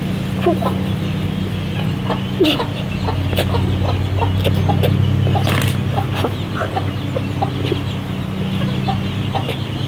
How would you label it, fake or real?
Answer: real